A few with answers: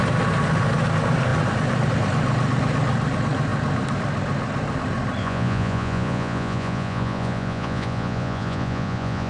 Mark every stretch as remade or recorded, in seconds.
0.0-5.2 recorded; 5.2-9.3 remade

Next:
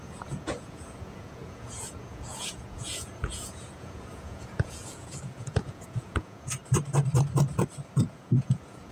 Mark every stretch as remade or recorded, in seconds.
0.0-6.6 remade; 6.6-8.0 recorded; 8.0-8.9 remade